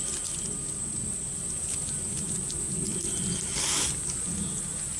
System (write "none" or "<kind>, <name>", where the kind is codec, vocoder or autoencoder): none